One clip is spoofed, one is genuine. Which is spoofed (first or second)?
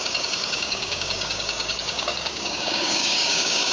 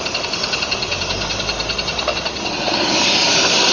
first